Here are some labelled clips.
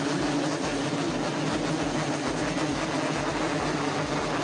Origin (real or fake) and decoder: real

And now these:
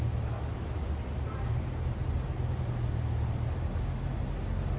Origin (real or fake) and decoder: real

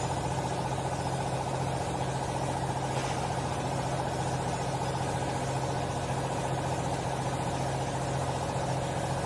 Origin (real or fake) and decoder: real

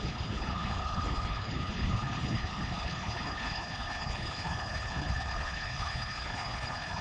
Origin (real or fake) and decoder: fake, codec, HILCodec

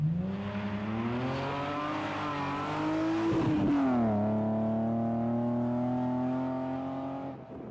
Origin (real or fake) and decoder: real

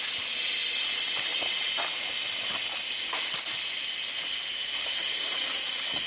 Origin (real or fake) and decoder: real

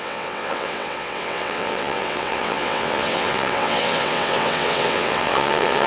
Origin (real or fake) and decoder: fake, vocoder, WaveNeXt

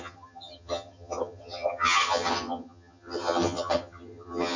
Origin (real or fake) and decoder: fake, vocoder, HiFi-GAN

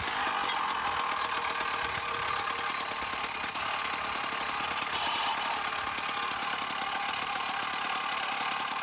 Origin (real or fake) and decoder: real